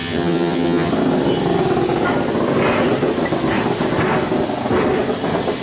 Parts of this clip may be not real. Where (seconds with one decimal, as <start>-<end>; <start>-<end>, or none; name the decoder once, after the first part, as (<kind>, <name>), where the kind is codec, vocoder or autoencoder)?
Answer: 0.0-0.9 (vocoder, HiFi-GAN)